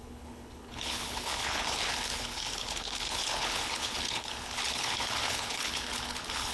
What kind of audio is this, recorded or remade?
remade